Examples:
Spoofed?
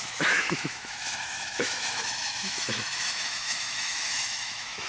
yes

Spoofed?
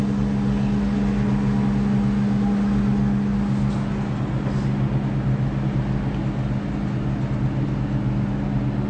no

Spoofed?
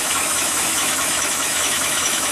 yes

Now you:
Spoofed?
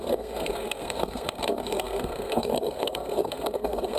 yes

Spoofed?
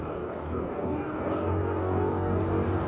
yes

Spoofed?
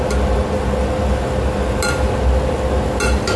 no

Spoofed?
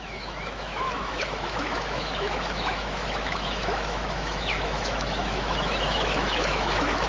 yes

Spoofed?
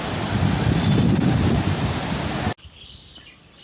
no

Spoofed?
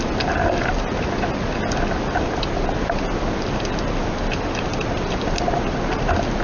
no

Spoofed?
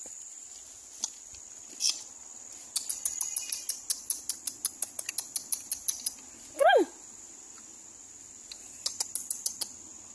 no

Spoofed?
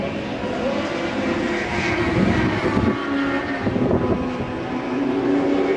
no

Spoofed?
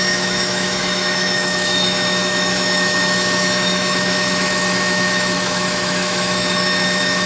yes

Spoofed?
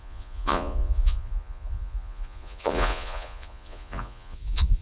yes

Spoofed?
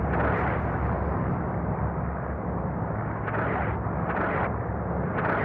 no